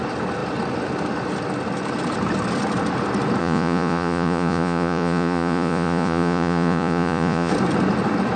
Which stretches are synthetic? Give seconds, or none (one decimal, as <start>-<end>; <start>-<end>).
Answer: 3.4-7.5